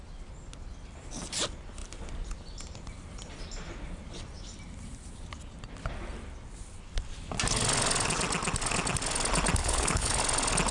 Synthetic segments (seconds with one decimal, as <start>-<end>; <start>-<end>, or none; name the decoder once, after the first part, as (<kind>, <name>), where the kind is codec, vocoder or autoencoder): 9.6-10.2 (codec, HILCodec)